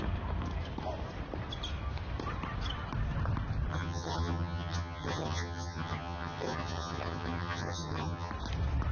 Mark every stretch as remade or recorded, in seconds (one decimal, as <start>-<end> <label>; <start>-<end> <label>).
0.0-3.7 recorded; 3.7-8.3 remade; 8.3-8.9 recorded

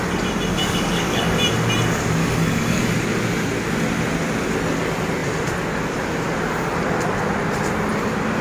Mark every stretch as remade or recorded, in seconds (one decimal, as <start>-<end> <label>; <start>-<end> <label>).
0.0-0.5 recorded; 0.5-1.2 remade; 1.2-2.2 recorded; 2.2-2.8 remade; 2.8-8.4 recorded

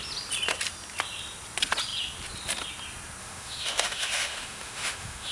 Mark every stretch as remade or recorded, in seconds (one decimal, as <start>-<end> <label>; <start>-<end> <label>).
0.0-3.2 recorded; 3.2-5.3 remade

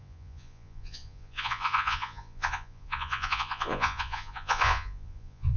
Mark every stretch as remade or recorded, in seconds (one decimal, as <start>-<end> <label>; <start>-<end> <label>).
0.0-5.6 remade

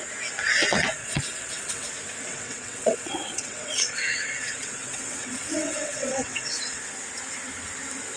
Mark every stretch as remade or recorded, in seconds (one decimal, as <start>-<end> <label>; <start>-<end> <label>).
0.0-1.0 recorded; 1.0-1.9 remade; 1.9-2.3 recorded; 2.3-6.8 remade; 6.8-8.2 recorded